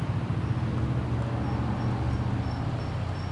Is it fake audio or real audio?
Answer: real